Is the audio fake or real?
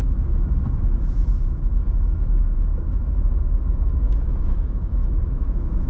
fake